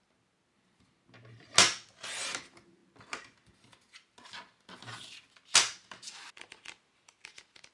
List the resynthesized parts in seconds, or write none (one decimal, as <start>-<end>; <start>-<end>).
none